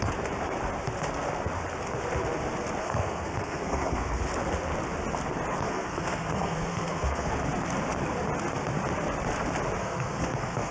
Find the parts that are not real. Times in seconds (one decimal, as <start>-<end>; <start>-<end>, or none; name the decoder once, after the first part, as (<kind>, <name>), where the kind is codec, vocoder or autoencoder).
2.8-4.2 (codec, SNAC); 5.5-7.3; 9.8-10.7